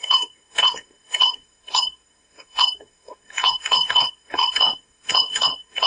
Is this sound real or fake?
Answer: fake